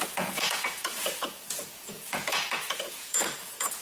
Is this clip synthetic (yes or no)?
yes